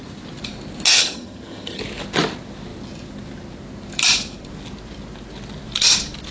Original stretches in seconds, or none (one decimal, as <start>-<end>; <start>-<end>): 0.0-0.9; 1.8-6.3